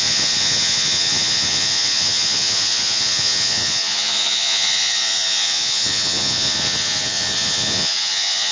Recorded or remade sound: remade